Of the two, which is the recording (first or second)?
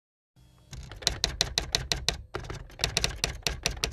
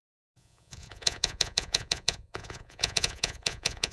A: first